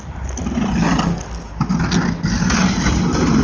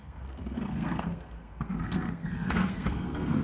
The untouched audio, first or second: first